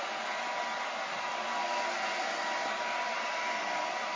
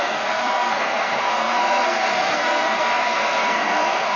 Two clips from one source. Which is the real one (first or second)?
first